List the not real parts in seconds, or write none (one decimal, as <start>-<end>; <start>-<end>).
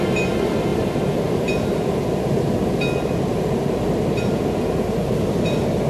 none